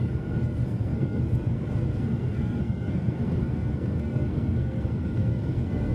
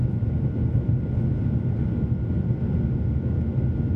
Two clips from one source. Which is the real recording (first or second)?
second